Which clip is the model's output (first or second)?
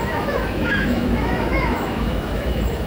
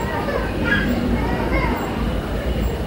first